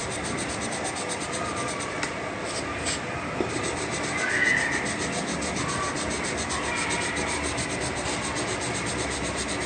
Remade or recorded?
remade